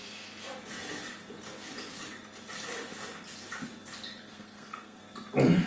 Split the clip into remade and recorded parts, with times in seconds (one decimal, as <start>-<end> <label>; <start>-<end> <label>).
0.0-4.3 recorded; 4.3-5.0 remade; 5.0-5.7 recorded